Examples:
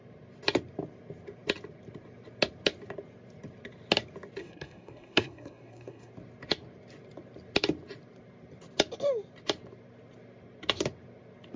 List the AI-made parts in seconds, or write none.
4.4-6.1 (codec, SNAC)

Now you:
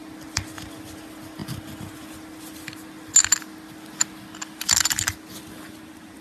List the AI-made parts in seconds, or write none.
none

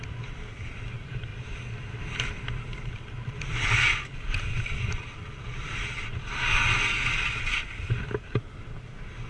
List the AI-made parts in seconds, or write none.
none

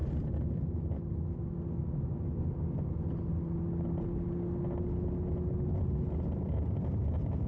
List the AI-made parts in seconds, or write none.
none

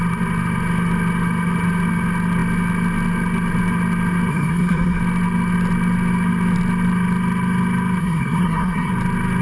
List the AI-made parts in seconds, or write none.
4.3-5.0 (codec, SNAC); 8.0-8.9

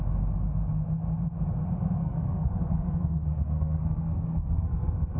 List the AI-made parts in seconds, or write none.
2.0-5.2 (codec, SNAC)

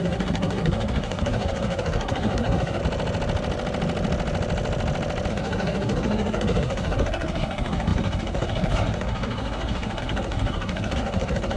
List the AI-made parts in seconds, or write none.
0.0-2.8 (codec, SNAC); 5.3-11.6

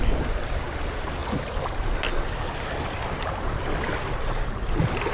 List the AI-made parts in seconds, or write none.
none